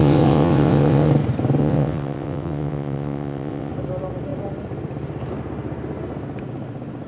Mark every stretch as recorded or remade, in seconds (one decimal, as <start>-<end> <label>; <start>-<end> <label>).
0.0-1.1 remade; 1.1-1.6 recorded; 1.6-3.7 remade; 3.7-7.1 recorded